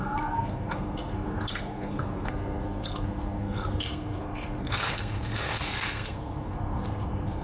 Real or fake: fake